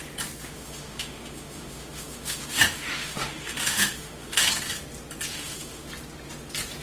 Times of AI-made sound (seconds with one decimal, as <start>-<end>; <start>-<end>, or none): 0.4-4.5; 5.3-5.9

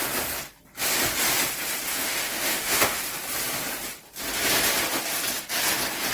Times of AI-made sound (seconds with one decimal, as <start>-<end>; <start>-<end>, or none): 1.9-3.0

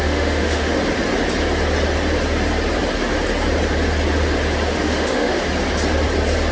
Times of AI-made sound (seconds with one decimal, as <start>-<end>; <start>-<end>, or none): 0.0-0.8; 4.7-5.4

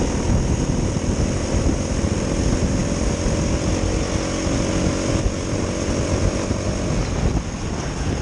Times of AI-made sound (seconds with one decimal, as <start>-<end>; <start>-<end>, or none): none

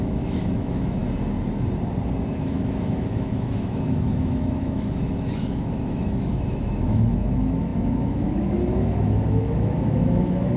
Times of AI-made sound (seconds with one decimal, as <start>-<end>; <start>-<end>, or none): 0.0-1.0; 2.3-10.6

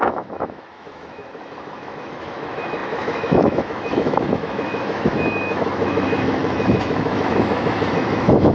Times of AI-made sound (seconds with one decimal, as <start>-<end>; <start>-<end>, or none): 0.0-8.5

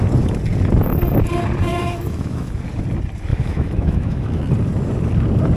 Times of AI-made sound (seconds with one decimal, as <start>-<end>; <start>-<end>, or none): 1.7-2.5; 3.3-4.4

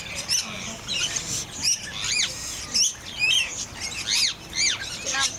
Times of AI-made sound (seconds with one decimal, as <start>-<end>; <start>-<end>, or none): none